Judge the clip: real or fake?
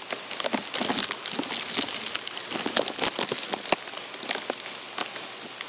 real